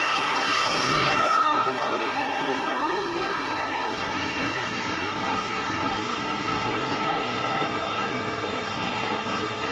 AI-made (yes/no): yes